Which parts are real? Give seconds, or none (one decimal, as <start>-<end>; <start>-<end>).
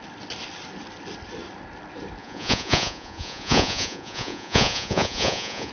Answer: 0.0-2.2